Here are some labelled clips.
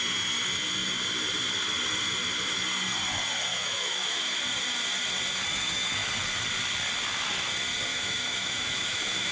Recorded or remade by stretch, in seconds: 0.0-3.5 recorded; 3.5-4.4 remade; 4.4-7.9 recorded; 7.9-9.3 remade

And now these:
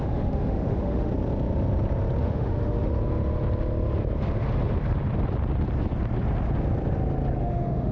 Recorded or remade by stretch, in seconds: 0.0-1.1 remade; 1.1-2.2 recorded; 2.2-2.9 remade; 2.9-7.4 recorded; 7.4-7.9 remade

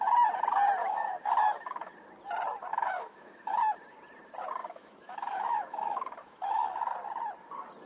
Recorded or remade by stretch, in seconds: 0.0-0.8 recorded; 0.8-1.9 remade; 1.9-2.7 recorded; 2.7-3.6 remade; 3.6-4.6 recorded; 4.6-6.8 remade; 6.8-7.9 recorded

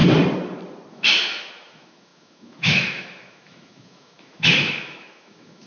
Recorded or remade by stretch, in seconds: 0.0-0.9 recorded; 0.9-5.7 remade

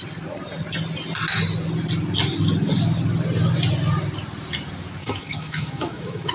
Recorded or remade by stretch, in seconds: 0.0-5.0 recorded; 5.0-6.3 remade

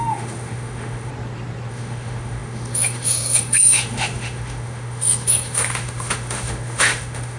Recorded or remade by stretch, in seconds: 0.0-1.1 remade; 1.1-1.7 recorded; 1.7-7.4 remade